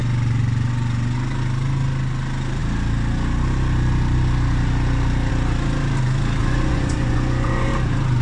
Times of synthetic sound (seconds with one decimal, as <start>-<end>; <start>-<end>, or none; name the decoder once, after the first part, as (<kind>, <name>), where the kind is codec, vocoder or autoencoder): 6.4-7.7 (vocoder, Vocos)